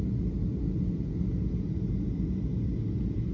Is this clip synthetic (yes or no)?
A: no